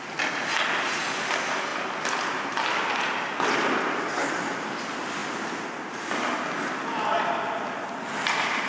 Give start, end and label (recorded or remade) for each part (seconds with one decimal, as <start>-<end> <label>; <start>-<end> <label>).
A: 0.0-8.7 recorded